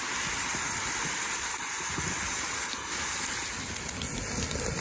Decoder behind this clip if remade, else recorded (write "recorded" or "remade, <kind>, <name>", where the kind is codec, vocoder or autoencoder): recorded